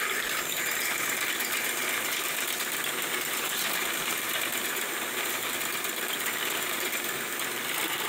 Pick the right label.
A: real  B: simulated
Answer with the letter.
B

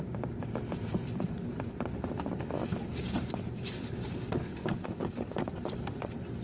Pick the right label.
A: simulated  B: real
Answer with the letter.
A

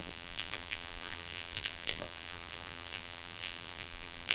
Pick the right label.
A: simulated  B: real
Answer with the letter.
A